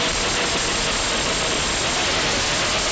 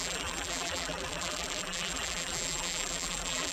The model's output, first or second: second